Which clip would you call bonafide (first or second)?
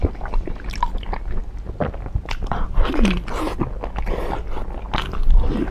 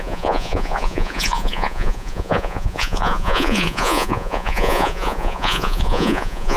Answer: first